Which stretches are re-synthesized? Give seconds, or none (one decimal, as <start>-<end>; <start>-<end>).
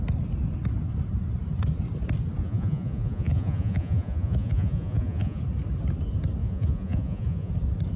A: 2.4-5.4; 6.4-7.5